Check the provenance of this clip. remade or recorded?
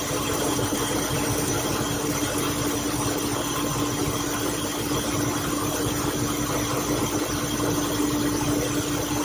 recorded